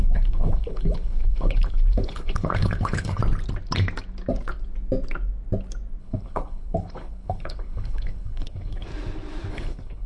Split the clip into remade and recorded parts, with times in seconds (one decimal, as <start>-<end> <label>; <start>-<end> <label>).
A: 0.0-3.2 remade; 3.2-6.0 recorded; 6.0-8.9 remade; 8.9-9.5 recorded; 9.5-10.1 remade